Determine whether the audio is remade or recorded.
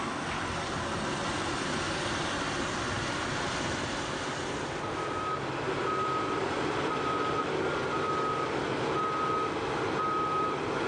recorded